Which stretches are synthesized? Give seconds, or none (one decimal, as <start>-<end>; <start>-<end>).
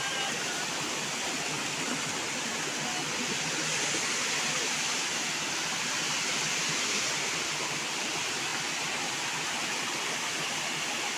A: none